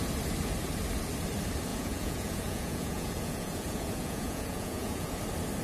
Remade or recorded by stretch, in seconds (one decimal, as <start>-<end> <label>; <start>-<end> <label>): 0.0-1.7 recorded; 1.7-5.1 remade; 5.1-5.6 recorded